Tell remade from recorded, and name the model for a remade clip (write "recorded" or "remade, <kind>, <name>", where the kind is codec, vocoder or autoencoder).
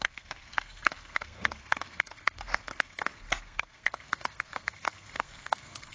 remade, codec, SNAC